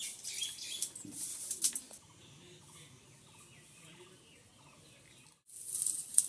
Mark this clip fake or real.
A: real